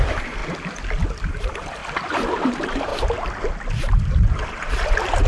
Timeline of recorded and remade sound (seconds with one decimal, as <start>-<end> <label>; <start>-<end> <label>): 0.0-0.4 remade; 0.4-1.3 recorded; 1.3-1.8 remade; 1.8-2.4 recorded; 2.4-2.9 remade; 2.9-3.8 recorded; 3.8-5.3 remade